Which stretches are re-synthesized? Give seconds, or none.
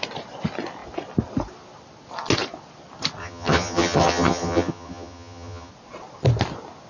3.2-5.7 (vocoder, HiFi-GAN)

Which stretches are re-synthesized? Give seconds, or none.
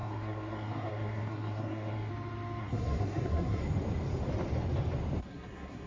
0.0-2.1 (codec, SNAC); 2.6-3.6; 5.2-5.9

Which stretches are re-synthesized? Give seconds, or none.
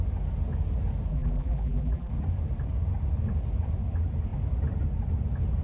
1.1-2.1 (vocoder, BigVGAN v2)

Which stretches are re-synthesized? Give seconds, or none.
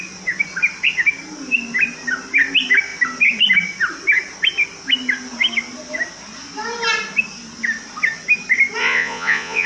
8.8-9.7 (vocoder, Vocos)